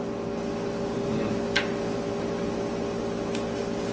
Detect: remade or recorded recorded